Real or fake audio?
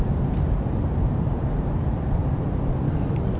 real